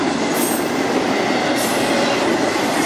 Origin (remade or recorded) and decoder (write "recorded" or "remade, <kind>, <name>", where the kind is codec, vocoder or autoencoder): recorded